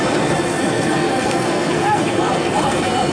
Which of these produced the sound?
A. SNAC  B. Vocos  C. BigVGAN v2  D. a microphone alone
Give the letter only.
A